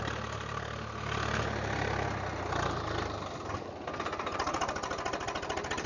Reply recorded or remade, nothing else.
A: recorded